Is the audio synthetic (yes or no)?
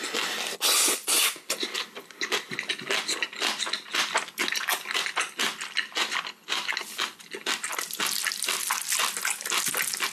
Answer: no